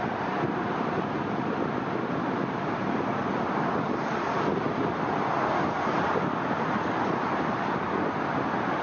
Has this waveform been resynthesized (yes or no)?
no